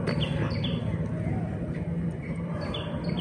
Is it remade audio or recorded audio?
recorded